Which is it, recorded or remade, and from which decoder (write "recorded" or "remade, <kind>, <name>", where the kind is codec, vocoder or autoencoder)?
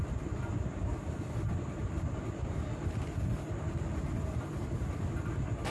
recorded